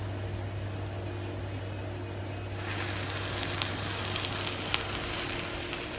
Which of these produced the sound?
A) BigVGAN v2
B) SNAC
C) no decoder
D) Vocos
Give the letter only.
C